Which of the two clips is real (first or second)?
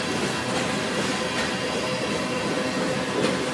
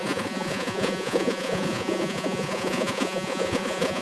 first